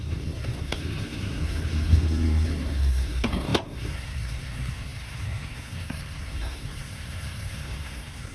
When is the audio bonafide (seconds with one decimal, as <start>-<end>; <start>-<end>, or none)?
none